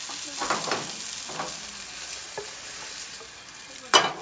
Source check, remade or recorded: recorded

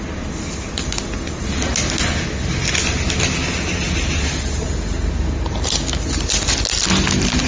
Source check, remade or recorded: recorded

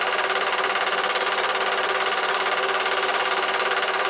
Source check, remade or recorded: recorded